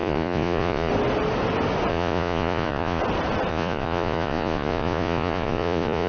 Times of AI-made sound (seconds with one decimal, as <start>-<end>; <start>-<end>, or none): 0.0-0.9; 1.9-3.0; 3.5-6.1